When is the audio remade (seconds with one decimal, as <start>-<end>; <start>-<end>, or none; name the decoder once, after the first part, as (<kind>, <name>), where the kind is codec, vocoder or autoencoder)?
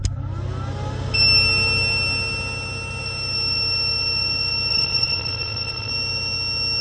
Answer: 4.7-5.9 (vocoder, WaveNeXt)